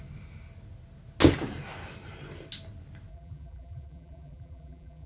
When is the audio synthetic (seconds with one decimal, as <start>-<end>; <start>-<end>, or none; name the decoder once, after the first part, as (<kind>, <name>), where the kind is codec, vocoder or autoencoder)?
3.1-5.1 (vocoder, BigVGAN v2)